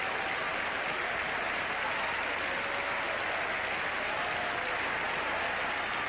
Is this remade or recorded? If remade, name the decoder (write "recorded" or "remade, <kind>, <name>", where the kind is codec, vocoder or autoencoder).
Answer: recorded